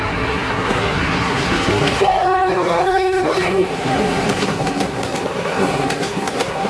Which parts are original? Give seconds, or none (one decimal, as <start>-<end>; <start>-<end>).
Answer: none

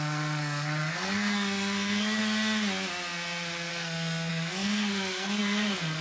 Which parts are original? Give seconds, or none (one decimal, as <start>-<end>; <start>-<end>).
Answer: 2.2-3.7

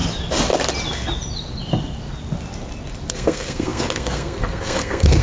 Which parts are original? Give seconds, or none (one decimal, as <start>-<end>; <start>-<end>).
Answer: 0.0-3.1

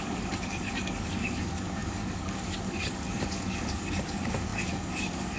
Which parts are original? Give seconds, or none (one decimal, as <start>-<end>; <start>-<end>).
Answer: none

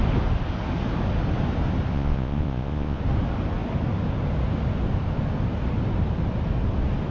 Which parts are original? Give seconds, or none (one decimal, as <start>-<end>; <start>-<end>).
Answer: 0.0-1.9; 3.0-7.1

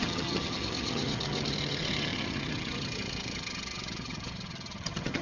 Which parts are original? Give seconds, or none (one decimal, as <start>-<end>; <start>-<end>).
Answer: none

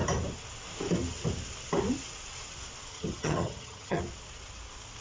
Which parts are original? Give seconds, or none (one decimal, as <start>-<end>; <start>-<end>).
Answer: 0.0-2.9; 4.0-5.0

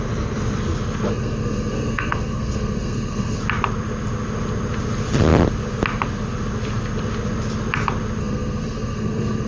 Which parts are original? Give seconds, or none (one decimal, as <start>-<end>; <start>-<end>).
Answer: 0.0-1.1; 3.4-8.2